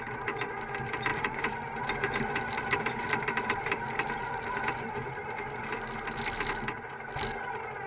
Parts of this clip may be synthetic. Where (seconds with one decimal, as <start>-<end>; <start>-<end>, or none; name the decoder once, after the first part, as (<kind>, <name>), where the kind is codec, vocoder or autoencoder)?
1.1-5.8 (vocoder, BigVGAN v2)